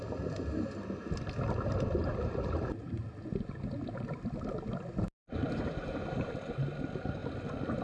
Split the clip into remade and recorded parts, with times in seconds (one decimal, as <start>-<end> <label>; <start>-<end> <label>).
0.0-2.0 recorded; 2.0-3.0 remade; 3.0-5.2 recorded; 5.2-6.3 remade; 6.3-7.8 recorded